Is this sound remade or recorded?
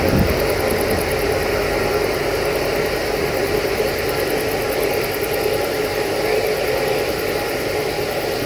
recorded